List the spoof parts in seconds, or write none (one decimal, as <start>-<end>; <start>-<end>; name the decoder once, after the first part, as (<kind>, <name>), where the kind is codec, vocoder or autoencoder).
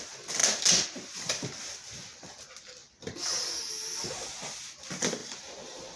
5.2-6.0 (vocoder, BigVGAN v2)